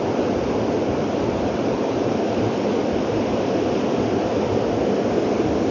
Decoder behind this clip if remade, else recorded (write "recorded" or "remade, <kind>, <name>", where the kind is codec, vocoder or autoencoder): recorded